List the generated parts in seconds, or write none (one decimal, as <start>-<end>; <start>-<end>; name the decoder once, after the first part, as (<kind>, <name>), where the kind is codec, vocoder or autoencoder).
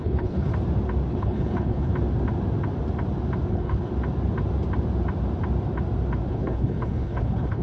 0.0-0.5 (codec, HILCodec); 1.1-1.9; 3.5-3.9; 6.3-7.6